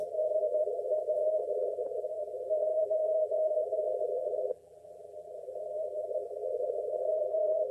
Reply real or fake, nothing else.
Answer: fake